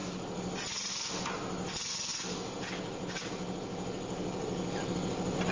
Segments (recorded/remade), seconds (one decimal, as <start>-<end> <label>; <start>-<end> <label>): 0.0-5.5 recorded